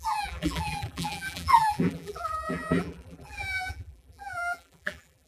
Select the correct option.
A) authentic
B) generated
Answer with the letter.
B